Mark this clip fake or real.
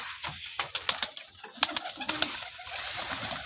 real